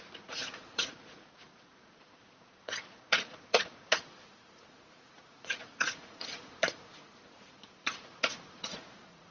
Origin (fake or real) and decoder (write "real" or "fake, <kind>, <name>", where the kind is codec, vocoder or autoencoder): fake, vocoder, Vocos